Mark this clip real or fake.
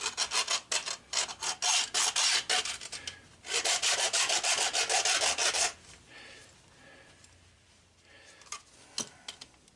real